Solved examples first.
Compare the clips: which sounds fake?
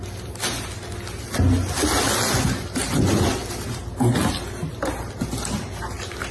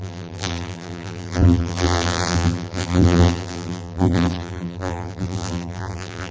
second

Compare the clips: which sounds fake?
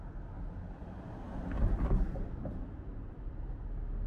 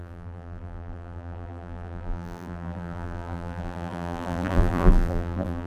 second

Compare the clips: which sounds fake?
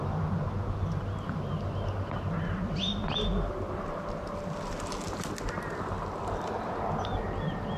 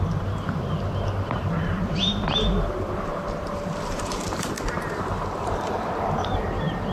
second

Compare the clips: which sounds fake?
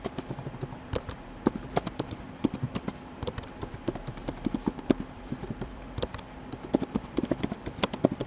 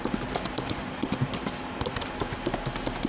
first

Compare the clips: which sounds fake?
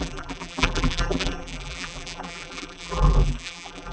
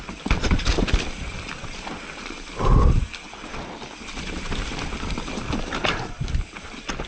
first